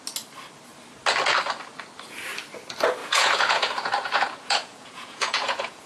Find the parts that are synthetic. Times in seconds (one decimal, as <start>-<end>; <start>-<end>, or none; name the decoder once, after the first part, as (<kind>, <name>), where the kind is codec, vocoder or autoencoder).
3.0-5.9 (vocoder, Vocos)